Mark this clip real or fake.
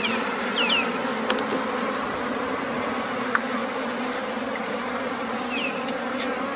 real